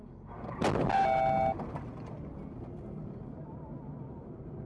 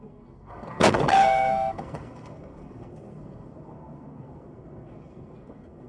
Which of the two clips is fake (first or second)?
second